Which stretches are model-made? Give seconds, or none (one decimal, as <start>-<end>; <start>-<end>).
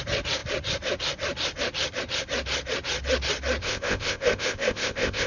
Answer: 3.6-5.3